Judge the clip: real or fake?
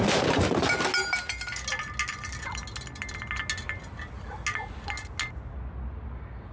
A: real